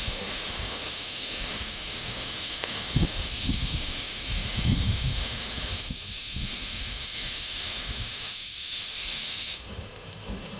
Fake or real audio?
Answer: fake